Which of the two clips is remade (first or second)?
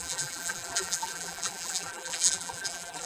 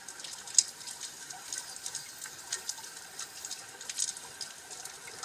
first